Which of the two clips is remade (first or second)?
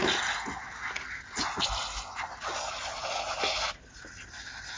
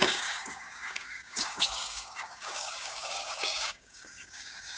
second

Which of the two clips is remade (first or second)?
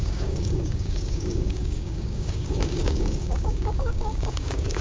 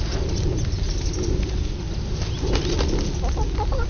first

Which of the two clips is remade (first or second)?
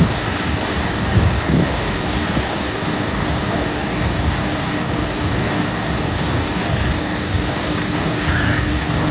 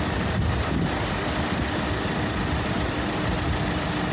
first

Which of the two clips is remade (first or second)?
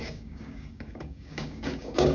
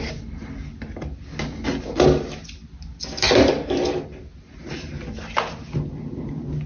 first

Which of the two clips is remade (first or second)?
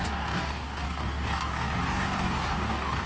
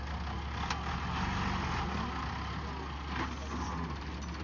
first